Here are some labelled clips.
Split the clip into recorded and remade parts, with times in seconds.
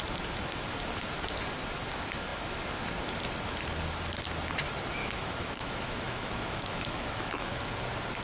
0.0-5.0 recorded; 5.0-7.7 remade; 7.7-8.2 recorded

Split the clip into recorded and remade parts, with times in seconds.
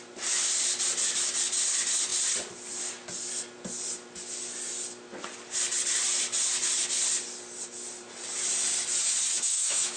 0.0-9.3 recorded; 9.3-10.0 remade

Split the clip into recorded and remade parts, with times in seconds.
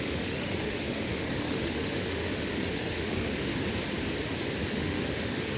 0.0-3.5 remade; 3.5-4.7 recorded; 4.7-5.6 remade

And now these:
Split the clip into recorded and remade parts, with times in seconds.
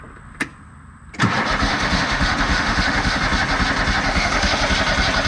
0.0-1.7 recorded; 1.7-3.2 remade; 3.2-4.1 recorded; 4.1-4.6 remade; 4.6-5.3 recorded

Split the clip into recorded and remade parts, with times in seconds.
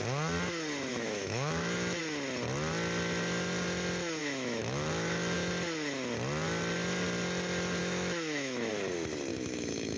0.0-0.9 recorded; 0.9-2.0 remade; 2.0-4.2 recorded; 4.2-5.5 remade; 5.5-7.8 recorded; 7.8-8.7 remade; 8.7-9.3 recorded; 9.3-10.0 remade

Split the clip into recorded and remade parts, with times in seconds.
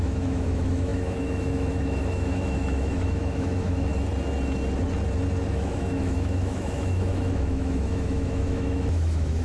0.0-3.9 remade; 3.9-5.5 recorded; 5.5-9.4 remade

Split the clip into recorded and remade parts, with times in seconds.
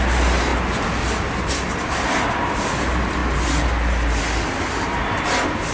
0.0-5.7 recorded